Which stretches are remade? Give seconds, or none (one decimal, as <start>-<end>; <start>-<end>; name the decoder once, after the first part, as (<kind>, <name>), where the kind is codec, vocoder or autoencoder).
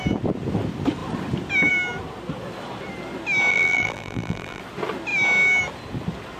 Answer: 3.5-4.6 (vocoder, BigVGAN v2)